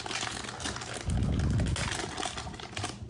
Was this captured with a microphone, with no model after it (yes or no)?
yes